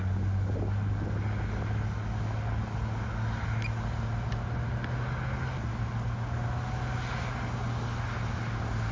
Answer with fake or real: real